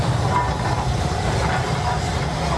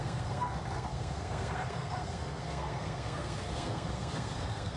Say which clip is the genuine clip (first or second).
first